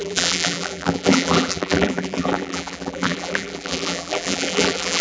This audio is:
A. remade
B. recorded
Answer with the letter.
A